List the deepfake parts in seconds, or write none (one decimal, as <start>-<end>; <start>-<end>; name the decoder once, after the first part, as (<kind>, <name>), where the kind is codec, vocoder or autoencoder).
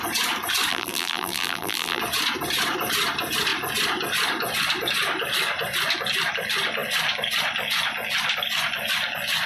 0.7-2.0 (vocoder, BigVGAN v2)